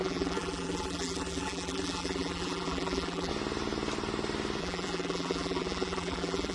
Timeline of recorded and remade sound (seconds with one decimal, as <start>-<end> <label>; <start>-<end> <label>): 0.0-3.3 remade; 3.3-4.6 recorded; 4.6-6.5 remade